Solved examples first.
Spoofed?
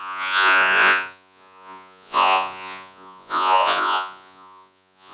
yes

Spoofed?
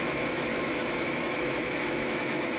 yes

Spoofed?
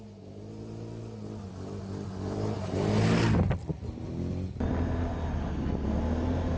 no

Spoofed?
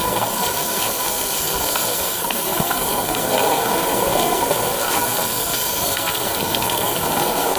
yes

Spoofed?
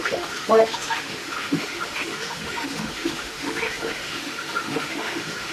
yes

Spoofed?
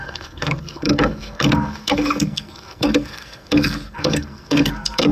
yes